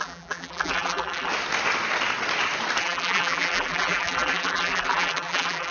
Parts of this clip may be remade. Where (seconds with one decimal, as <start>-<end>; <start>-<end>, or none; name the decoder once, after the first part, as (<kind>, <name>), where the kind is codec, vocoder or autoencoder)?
0.0-1.3 (vocoder, BigVGAN v2); 2.8-5.7